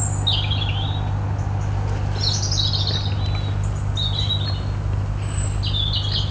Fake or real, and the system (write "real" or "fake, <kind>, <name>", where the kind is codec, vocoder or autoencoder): real